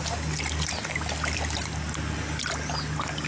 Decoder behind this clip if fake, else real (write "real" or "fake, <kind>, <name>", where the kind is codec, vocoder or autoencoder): real